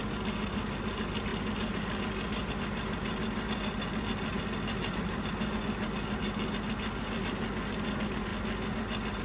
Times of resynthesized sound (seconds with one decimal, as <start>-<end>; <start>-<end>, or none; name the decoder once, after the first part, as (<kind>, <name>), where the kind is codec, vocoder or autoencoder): none